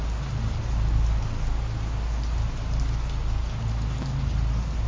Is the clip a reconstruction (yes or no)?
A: no